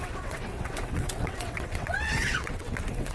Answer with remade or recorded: remade